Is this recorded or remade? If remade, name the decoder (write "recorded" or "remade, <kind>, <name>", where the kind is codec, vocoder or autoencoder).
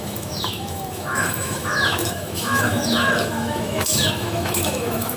remade, autoencoder, DAC-VAE